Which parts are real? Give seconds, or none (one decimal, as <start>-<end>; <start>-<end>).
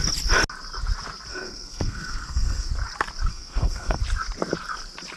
0.0-1.3; 2.7-3.3; 4.0-5.2